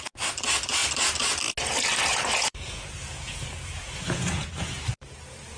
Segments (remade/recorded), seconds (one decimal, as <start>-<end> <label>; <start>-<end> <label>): 0.0-2.1 recorded; 2.1-4.8 remade; 4.8-5.6 recorded